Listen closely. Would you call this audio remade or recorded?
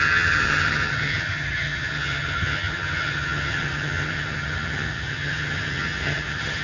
remade